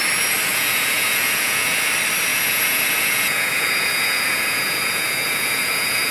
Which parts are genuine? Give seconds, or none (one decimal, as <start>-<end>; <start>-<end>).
0.0-0.5; 1.9-2.3